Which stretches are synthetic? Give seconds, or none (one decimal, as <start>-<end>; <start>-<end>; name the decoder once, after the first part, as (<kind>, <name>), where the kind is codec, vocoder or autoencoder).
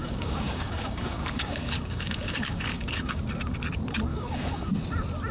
0.0-3.2 (codec, DAC); 4.1-4.7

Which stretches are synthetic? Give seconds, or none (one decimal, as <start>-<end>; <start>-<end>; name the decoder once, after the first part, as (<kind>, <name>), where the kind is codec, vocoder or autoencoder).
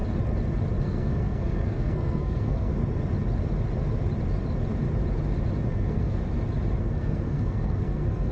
0.8-2.7 (codec, SNAC); 5.7-6.2; 6.8-8.3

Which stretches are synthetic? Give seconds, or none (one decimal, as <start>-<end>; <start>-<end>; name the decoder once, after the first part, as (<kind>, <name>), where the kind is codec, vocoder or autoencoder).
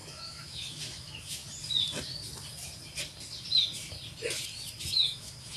0.0-1.4 (autoencoder, DAC-VAE); 4.8-5.6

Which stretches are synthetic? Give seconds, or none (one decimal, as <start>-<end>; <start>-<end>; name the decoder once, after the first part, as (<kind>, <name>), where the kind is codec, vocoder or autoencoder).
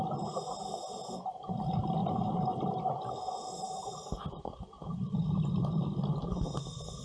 none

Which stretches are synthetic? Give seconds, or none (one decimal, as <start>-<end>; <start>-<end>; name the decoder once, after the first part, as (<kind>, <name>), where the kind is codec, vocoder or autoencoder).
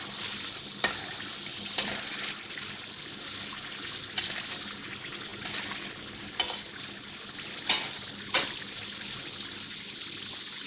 none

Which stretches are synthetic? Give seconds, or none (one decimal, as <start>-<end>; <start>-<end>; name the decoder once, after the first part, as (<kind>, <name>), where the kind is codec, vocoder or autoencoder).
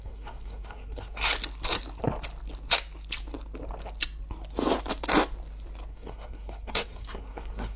0.0-1.3 (codec, SNAC); 5.9-7.8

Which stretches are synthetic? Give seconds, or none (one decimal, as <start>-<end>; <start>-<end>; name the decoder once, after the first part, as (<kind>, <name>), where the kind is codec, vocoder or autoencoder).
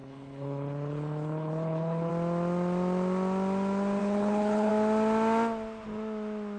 0.0-2.1 (codec, HILCodec); 4.0-4.7